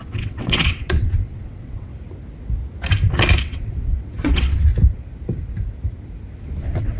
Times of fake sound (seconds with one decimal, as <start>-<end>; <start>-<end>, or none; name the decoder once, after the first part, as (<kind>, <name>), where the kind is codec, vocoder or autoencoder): 0.0-1.9 (vocoder, WaveNeXt); 3.4-4.7; 6.6-7.0